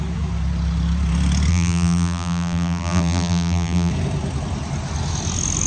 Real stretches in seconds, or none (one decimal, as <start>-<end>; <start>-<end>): 0.0-1.5; 3.9-5.7